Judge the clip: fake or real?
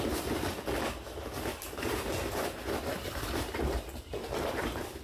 fake